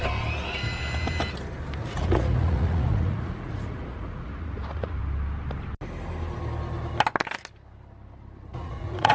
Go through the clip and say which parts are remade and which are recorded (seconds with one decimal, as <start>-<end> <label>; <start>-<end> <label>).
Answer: 0.0-1.8 recorded; 1.8-5.0 remade; 5.0-8.5 recorded; 8.5-9.1 remade